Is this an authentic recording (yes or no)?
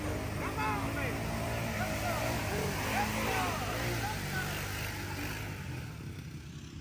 yes